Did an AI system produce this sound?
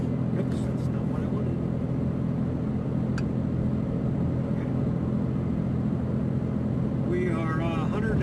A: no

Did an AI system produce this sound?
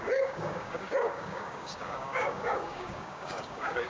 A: yes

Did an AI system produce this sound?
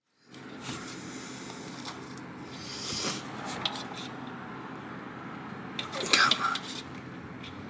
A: no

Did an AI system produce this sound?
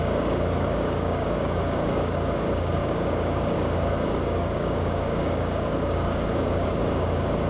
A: yes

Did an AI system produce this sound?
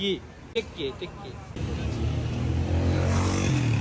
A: no